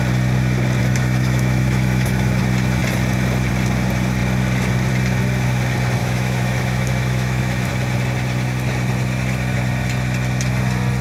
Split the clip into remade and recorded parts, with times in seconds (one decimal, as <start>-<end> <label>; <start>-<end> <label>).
0.0-0.8 recorded; 0.8-2.4 remade; 2.4-6.0 recorded; 6.0-7.7 remade; 7.7-11.0 recorded